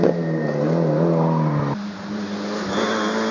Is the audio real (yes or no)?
yes